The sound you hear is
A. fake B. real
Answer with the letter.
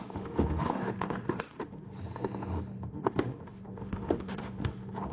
A